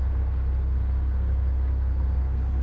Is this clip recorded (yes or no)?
no